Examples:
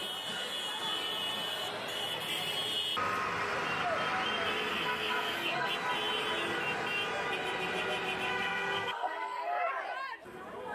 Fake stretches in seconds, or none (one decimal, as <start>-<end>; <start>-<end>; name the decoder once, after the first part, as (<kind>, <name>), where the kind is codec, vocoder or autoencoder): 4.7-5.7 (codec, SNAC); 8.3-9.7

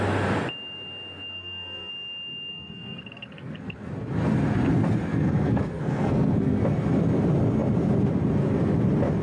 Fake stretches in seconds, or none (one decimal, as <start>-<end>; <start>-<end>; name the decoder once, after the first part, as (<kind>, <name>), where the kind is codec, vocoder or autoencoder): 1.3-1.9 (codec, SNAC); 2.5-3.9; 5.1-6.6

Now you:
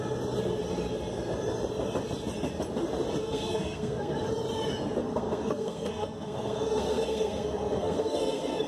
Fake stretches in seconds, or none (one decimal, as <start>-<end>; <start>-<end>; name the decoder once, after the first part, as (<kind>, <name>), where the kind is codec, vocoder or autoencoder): 3.2-4.2 (codec, SNAC); 5.0-8.7